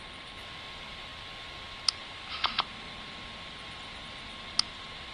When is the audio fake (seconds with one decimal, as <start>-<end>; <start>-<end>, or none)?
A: none